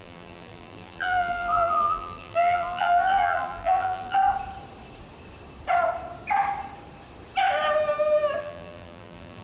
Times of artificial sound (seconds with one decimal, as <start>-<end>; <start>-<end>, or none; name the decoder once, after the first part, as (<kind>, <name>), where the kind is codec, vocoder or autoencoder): 0.0-4.2 (vocoder, BigVGAN v2); 8.4-9.4